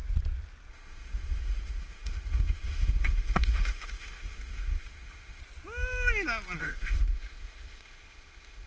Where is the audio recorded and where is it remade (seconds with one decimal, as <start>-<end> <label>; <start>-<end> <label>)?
0.0-0.7 recorded; 0.7-5.4 remade; 5.4-6.6 recorded; 6.6-8.7 remade